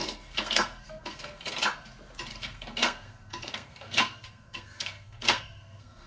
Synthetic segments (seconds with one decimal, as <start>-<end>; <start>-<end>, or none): 0.0-1.5; 2.3-6.1